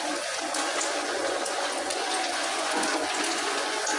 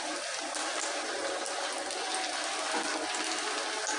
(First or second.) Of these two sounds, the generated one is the first